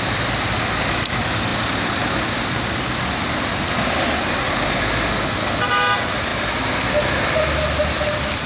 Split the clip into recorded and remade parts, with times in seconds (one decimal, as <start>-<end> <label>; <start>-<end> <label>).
0.0-8.5 recorded